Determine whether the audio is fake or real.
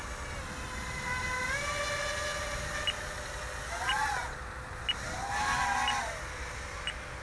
real